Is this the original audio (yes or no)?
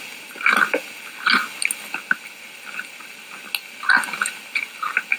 yes